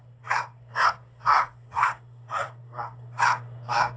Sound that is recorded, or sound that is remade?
remade